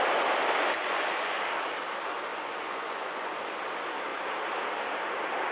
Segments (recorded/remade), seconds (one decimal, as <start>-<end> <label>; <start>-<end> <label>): 0.0-0.5 recorded; 0.5-1.4 remade; 1.4-2.3 recorded; 2.3-3.5 remade; 3.5-5.5 recorded